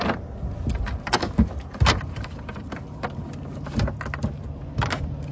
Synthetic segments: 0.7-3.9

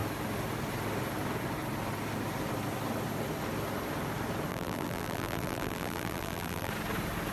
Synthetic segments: 4.5-6.7

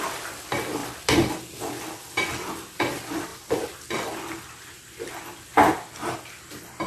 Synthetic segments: 0.8-1.4; 3.3-3.9

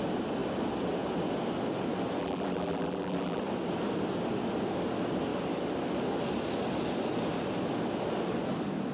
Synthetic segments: 2.2-3.4

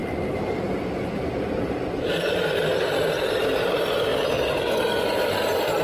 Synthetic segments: 0.0-2.9; 4.1-4.7